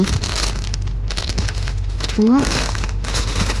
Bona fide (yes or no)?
no